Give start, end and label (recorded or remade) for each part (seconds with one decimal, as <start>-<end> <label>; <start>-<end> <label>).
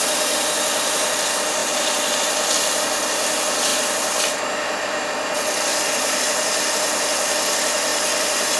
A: 0.0-1.6 recorded; 1.6-2.2 remade; 2.2-5.7 recorded; 5.7-6.2 remade; 6.2-8.6 recorded